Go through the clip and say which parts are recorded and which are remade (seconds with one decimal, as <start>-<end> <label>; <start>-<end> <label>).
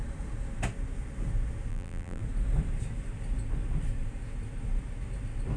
0.0-1.7 recorded; 1.7-2.2 remade; 2.2-5.6 recorded